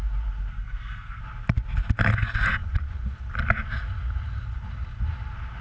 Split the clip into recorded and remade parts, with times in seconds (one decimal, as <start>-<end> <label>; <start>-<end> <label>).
0.0-0.5 recorded; 0.5-1.2 remade; 1.2-5.6 recorded